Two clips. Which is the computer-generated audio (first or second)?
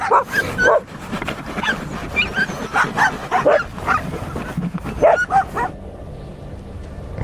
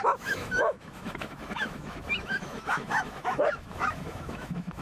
second